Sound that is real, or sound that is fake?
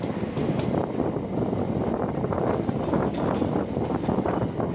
real